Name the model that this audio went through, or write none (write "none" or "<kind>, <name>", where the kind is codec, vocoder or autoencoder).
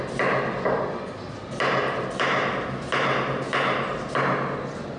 none